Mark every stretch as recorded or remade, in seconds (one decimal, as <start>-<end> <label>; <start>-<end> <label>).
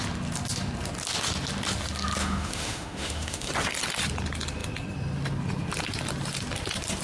0.0-2.2 recorded; 2.2-3.5 remade; 3.5-7.0 recorded